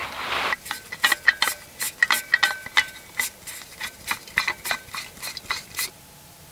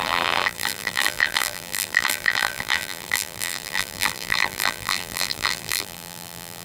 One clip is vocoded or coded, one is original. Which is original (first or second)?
first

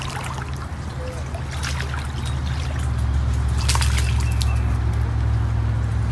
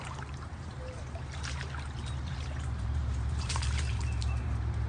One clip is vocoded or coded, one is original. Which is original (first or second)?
first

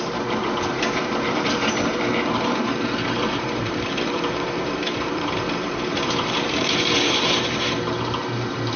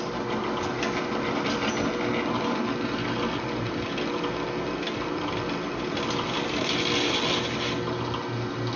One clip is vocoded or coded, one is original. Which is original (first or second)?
second